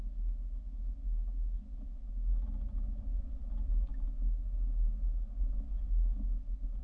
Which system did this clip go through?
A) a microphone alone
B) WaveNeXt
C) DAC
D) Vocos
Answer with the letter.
A